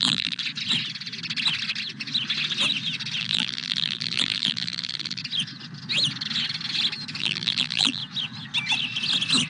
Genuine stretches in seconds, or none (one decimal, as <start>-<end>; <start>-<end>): 0.4-3.2; 5.2-7.2; 8.0-9.5